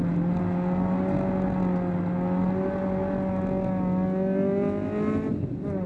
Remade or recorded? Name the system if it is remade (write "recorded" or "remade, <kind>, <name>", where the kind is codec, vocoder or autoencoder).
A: recorded